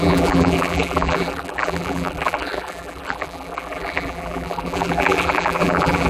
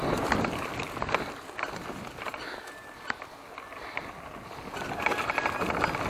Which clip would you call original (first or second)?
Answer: second